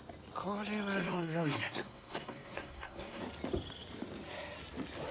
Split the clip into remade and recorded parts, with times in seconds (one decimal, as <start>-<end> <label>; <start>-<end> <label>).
0.0-1.0 recorded; 1.0-3.2 remade; 3.2-5.1 recorded